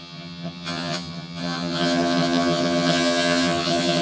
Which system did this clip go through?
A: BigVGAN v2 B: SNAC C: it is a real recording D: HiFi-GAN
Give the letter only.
D